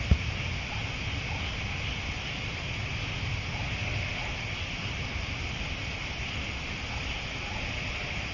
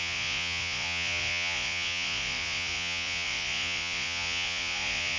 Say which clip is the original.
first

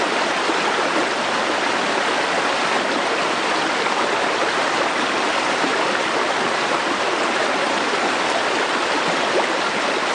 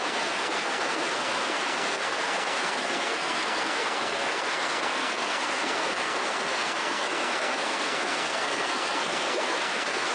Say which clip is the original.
first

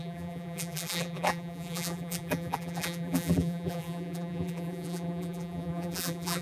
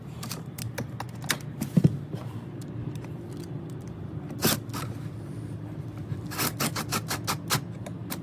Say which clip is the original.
second